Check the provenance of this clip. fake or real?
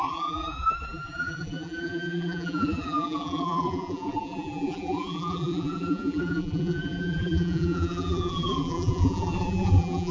fake